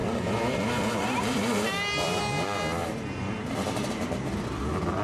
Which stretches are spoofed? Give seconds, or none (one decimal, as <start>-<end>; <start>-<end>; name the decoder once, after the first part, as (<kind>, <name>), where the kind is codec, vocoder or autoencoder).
0.0-2.2 (vocoder, BigVGAN v2); 2.8-4.6